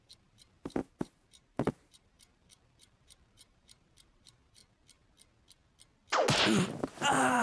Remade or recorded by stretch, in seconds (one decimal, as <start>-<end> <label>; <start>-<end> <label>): 0.0-4.6 remade; 4.6-6.8 recorded; 6.8-7.4 remade